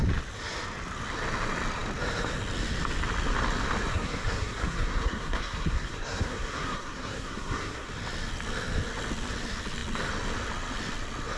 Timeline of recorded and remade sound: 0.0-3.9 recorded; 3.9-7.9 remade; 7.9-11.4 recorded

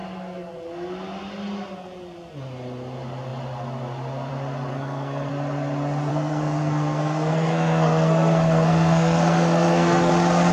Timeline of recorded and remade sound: 0.0-4.7 recorded; 4.7-5.3 remade; 5.3-6.1 recorded; 6.1-10.1 remade; 10.1-10.5 recorded

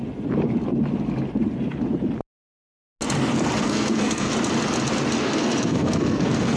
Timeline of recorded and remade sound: 0.0-3.6 recorded; 3.6-4.3 remade; 4.3-5.2 recorded; 5.2-6.6 remade

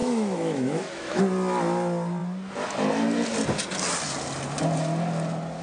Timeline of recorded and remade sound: 0.0-1.2 remade; 1.2-5.6 recorded